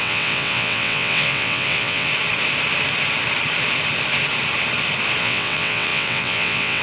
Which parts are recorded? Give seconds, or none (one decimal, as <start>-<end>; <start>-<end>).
2.1-5.2